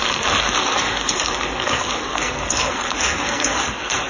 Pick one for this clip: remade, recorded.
remade